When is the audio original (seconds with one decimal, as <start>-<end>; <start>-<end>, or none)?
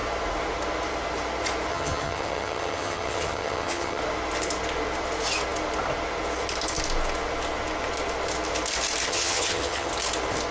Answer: 0.0-1.7; 4.0-9.1; 9.9-10.5